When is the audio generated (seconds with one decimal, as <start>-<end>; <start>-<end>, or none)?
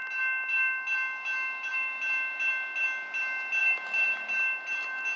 none